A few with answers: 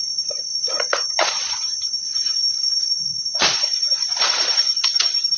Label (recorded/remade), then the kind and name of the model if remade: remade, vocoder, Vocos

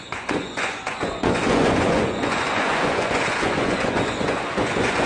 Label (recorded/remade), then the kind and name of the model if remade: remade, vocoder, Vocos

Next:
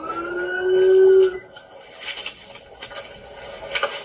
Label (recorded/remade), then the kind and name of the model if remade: recorded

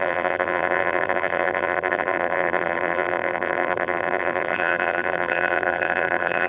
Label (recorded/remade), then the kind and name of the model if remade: remade, vocoder, BigVGAN v2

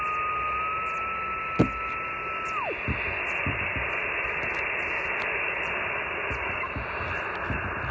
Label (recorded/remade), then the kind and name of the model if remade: recorded